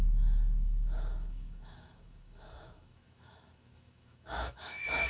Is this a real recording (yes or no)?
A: no